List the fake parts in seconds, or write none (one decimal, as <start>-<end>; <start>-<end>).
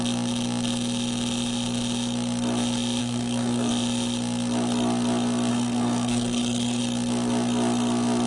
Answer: 3.0-3.7; 5.5-6.8